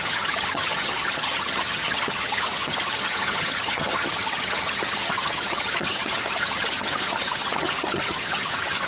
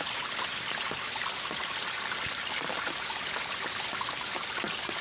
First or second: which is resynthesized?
first